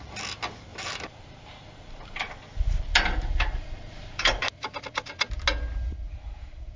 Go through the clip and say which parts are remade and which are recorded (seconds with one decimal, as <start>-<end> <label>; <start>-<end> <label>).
0.0-0.7 recorded; 0.7-4.8 remade; 4.8-6.8 recorded